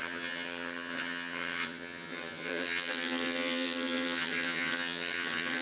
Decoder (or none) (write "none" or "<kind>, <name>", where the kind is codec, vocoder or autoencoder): vocoder, HiFi-GAN